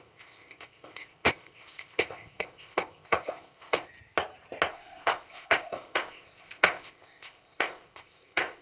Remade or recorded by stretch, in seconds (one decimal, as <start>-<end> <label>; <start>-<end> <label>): 0.0-3.9 remade; 3.9-4.7 recorded; 4.7-8.6 remade